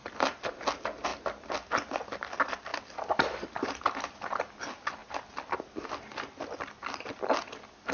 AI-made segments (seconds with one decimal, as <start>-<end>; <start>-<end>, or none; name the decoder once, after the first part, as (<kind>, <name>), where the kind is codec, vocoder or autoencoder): 0.0-0.6 (vocoder, BigVGAN v2); 1.1-1.7; 2.7-3.8; 5.0-5.6